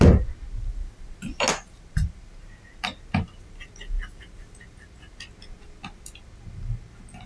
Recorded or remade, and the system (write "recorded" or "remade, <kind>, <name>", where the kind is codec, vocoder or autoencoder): recorded